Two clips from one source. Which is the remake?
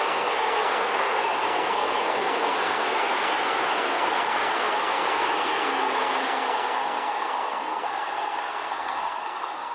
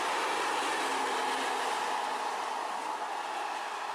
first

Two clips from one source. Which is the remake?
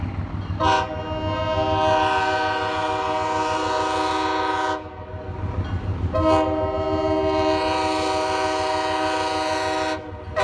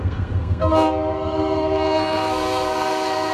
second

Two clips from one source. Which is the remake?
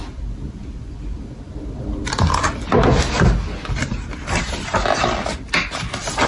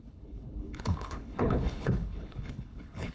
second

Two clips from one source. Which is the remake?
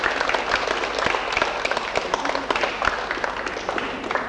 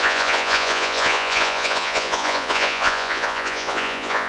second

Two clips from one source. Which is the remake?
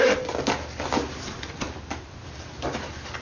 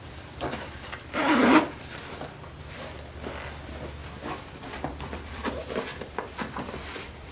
second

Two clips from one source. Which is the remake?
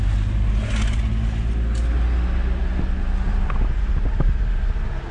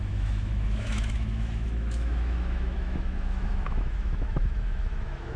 second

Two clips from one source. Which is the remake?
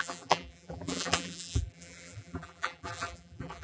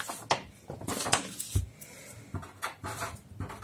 first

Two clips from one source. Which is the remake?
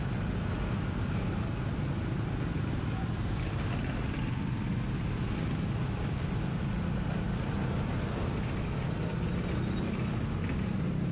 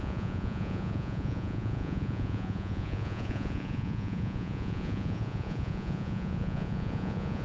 second